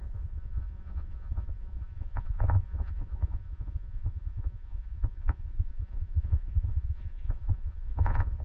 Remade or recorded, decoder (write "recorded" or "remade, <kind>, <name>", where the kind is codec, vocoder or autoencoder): remade, vocoder, Vocos